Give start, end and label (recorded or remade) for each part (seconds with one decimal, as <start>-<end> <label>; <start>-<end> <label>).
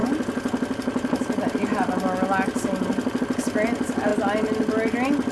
0.0-5.3 recorded